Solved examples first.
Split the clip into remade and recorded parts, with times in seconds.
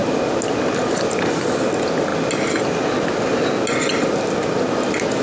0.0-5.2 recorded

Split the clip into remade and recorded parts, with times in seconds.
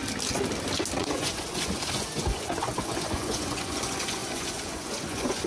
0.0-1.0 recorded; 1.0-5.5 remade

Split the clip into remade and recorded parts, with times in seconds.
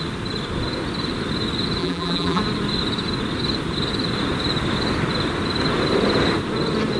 0.0-1.8 recorded; 1.8-2.4 remade; 2.4-7.0 recorded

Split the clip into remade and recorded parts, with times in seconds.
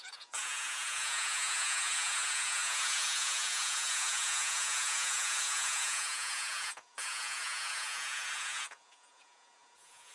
0.0-10.1 remade